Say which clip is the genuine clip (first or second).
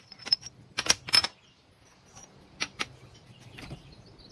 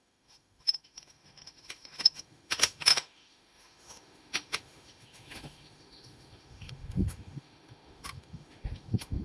first